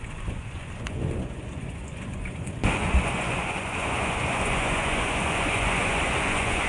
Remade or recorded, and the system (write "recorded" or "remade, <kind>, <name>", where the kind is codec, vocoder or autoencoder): remade, vocoder, Vocos